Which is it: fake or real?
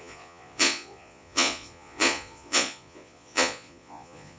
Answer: fake